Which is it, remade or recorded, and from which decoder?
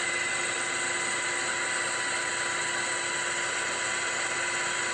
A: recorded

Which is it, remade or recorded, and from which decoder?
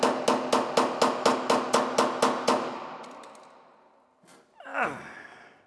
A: recorded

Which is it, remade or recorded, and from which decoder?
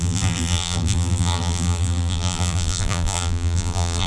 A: remade, vocoder, BigVGAN v2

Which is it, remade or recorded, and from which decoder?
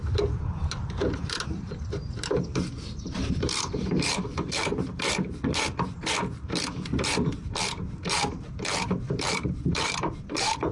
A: remade, vocoder, BigVGAN v2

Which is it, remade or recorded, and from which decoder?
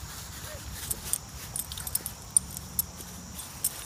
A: recorded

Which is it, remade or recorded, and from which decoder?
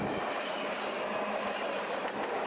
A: recorded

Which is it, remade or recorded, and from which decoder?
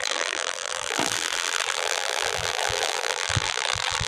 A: remade, vocoder, BigVGAN v2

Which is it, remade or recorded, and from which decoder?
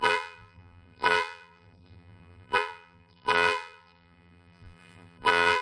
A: remade, vocoder, BigVGAN v2